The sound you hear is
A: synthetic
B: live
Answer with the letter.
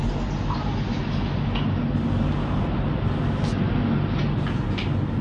B